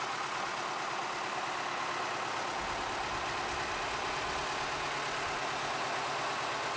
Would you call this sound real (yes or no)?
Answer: yes